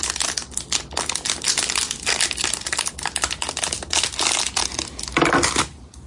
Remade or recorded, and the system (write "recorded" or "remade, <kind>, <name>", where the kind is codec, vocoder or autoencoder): recorded